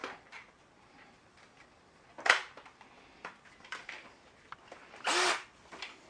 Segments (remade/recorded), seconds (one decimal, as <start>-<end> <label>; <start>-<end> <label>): 0.0-0.6 recorded; 0.6-6.1 remade